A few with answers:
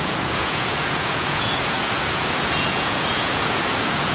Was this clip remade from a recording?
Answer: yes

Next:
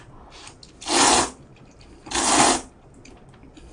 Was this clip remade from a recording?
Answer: no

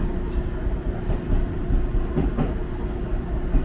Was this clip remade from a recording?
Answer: no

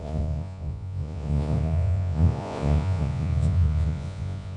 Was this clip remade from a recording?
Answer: yes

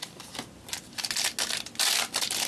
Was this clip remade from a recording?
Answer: no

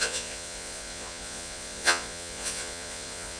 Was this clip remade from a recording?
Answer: yes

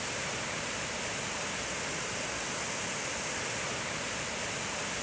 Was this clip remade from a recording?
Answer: no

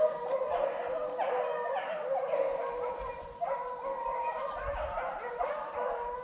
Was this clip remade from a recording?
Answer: no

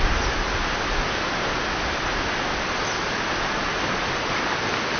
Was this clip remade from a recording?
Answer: no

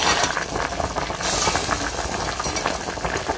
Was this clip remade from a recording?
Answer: no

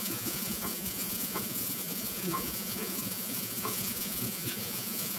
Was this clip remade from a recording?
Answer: yes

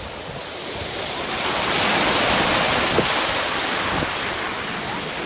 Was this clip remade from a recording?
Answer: no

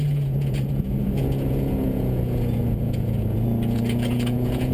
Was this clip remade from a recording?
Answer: yes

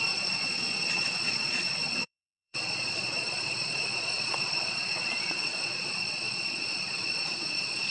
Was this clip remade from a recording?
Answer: yes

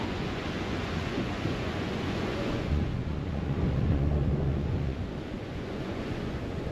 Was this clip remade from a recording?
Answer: yes